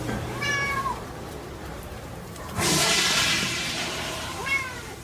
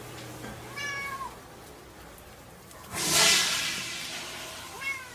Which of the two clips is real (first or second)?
second